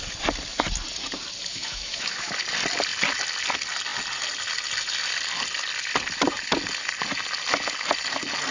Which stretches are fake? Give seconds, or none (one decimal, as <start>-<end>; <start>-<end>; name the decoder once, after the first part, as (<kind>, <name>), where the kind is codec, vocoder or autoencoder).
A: 1.5-2.3 (autoencoder, DAC-VAE)